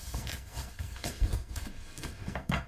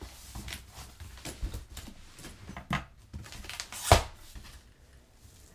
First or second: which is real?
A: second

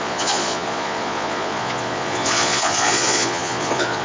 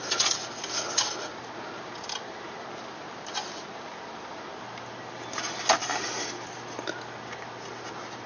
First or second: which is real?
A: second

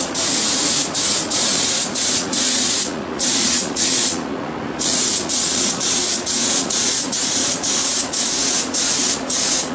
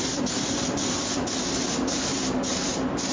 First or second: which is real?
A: second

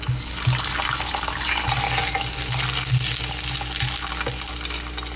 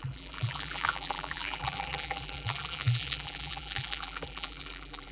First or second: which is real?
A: first